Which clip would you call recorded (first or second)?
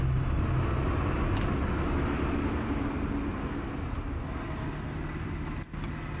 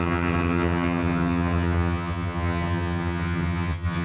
first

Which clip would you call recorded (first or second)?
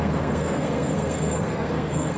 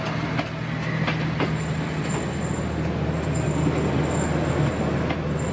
second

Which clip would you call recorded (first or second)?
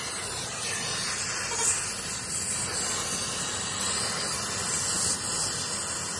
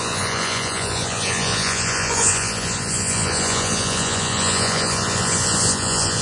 first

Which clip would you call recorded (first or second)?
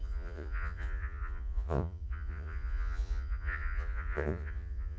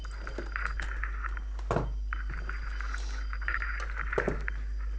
second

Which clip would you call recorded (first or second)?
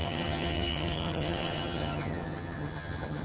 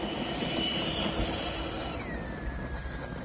second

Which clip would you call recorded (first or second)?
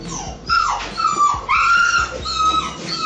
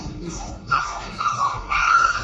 first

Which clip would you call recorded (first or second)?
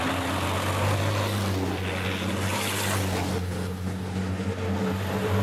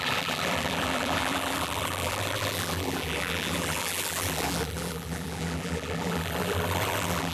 first